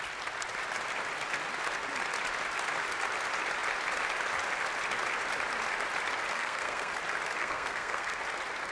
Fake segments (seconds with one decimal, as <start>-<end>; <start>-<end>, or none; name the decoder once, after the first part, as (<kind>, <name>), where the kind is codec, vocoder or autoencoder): 6.3-6.9 (codec, SNAC); 7.4-8.2